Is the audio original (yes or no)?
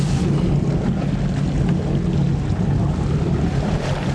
yes